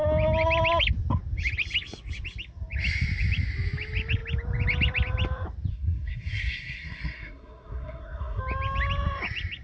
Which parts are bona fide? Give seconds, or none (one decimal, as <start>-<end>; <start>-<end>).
0.0-5.7; 8.4-9.6